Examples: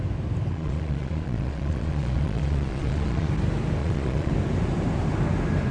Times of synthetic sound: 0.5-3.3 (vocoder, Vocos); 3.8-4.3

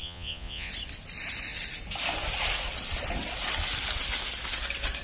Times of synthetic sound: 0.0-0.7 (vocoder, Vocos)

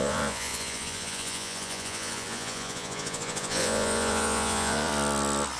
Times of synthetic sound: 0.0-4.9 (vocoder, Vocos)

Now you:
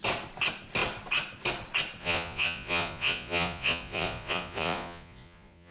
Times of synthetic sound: 2.0-5.7 (vocoder, Vocos)